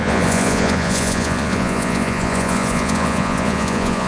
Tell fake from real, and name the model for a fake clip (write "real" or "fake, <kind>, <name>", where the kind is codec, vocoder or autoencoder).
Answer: fake, vocoder, Vocos